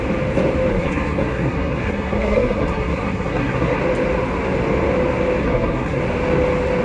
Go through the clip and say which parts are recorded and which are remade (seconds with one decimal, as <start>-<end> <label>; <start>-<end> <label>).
0.0-0.7 recorded; 0.7-3.8 remade; 3.8-5.4 recorded; 5.4-6.0 remade; 6.0-6.8 recorded